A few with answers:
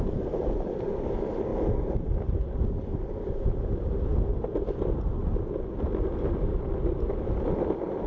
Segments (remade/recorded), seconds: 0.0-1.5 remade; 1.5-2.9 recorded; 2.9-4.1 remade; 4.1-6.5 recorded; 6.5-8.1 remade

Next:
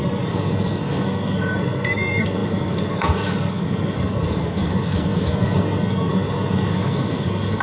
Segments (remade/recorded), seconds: 0.0-7.6 remade